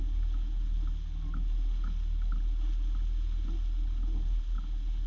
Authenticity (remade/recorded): recorded